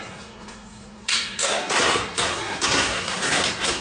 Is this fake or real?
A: fake